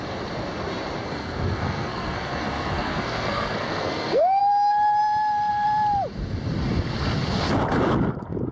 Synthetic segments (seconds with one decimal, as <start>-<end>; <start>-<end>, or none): 1.0-4.4